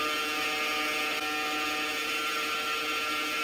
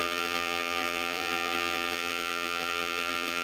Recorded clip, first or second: first